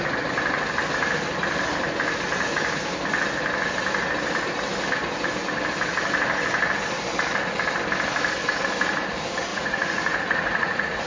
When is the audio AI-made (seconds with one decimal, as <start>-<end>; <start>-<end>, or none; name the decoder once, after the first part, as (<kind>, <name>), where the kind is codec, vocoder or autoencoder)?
9.5-11.1 (vocoder, Vocos)